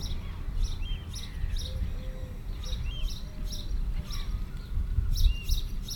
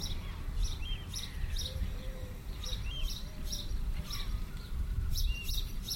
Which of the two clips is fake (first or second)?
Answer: second